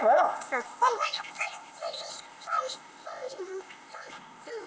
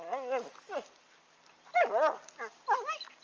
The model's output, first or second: first